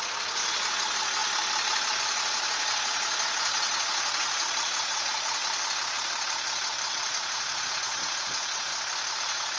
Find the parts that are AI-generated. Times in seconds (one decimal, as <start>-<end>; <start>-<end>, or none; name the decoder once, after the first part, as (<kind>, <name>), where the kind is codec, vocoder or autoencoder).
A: 0.0-1.2 (vocoder, Vocos); 2.0-5.4; 6.9-8.7; 9.2-9.6